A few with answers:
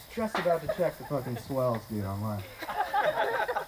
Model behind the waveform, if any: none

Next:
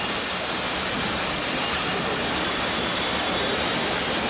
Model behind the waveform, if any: none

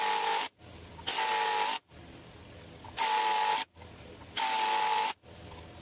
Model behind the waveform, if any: none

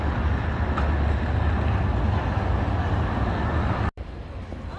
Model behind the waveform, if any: none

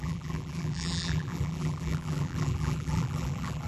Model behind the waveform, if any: vocoder, BigVGAN v2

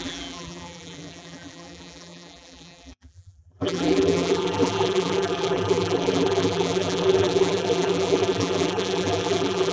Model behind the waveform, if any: vocoder, BigVGAN v2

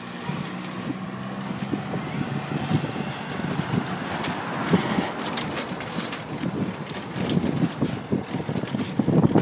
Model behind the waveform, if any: none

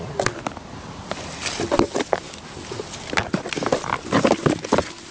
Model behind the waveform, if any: none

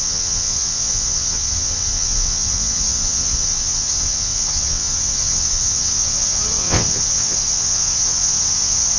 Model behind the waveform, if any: vocoder, WaveNeXt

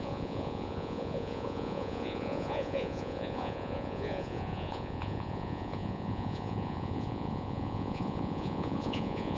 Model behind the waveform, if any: vocoder, Vocos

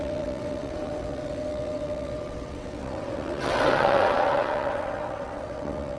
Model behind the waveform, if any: vocoder, WaveNeXt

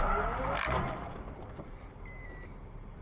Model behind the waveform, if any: none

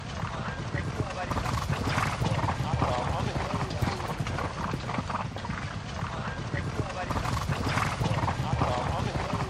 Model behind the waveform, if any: none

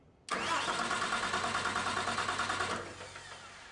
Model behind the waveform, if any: none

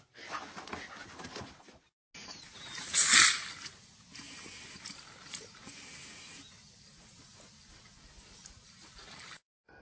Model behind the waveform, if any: none